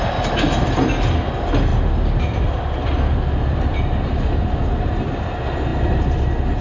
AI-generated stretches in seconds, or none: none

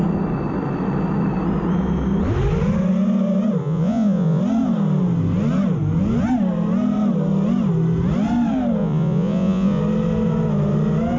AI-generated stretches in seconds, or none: 3.6-4.4 (vocoder, Vocos); 8.8-9.8

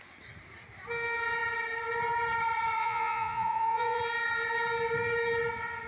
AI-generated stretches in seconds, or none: 2.8-4.0 (vocoder, Vocos)

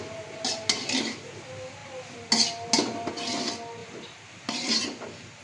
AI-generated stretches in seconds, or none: none

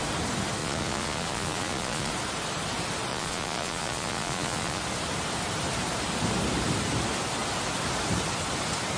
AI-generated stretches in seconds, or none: 0.6-2.1 (vocoder, Vocos); 3.1-4.8